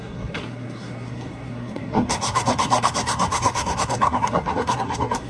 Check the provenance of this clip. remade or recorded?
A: remade